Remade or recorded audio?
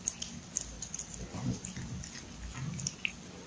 recorded